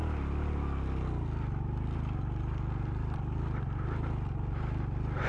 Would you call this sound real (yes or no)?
yes